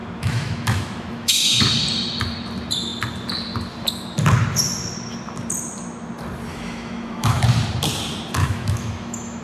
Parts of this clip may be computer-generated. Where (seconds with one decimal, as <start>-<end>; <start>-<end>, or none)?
0.0-1.6; 6.5-7.4; 8.4-9.4